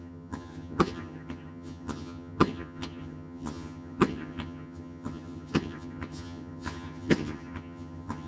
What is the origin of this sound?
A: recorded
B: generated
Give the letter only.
B